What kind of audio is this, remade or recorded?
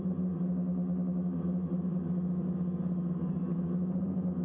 recorded